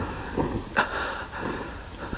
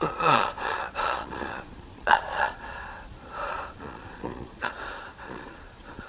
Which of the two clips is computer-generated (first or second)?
second